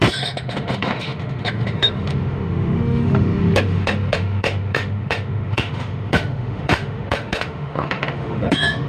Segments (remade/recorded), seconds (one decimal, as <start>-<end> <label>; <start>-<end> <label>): 0.0-8.9 remade